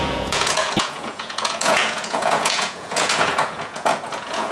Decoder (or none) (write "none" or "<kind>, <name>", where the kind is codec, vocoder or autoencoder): vocoder, Vocos